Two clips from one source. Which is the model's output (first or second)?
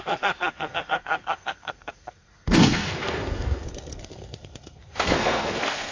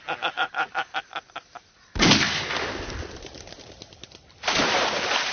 first